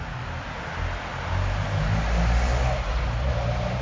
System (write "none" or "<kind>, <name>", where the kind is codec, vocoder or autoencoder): none